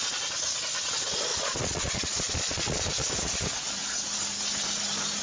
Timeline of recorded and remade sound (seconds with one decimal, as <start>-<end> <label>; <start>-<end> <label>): 0.0-1.3 recorded; 1.3-2.9 remade; 2.9-5.2 recorded